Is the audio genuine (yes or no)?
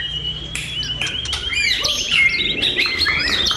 no